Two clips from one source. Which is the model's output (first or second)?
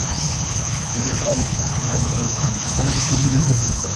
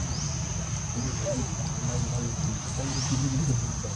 first